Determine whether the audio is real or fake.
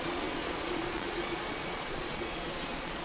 fake